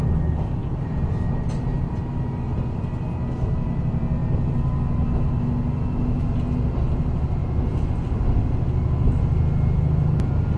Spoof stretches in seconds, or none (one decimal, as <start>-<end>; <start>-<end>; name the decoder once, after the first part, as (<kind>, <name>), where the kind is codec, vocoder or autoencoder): none